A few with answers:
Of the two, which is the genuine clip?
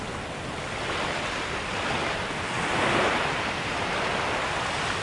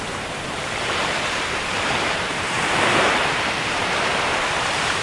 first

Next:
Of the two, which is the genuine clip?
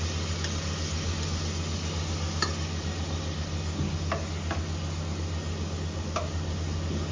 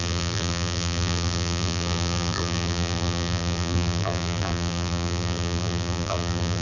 first